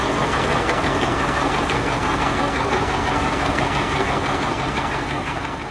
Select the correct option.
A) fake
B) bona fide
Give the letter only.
A